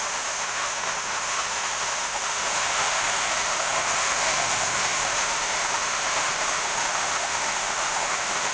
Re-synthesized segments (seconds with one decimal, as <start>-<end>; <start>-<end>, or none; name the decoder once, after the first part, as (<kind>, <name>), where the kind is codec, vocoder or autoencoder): 0.0-8.5 (autoencoder, DAC-VAE)